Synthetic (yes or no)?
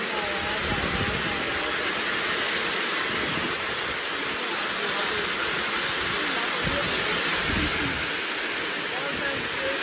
no